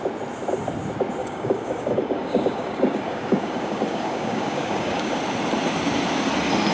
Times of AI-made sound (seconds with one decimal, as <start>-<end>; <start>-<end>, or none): 1.2-5.2